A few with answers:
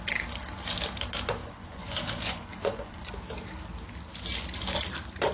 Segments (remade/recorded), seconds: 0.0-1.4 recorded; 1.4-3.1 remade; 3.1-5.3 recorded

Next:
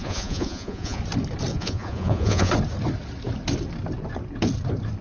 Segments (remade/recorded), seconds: 0.0-1.0 remade; 1.0-1.5 recorded; 1.5-2.5 remade; 2.5-5.0 recorded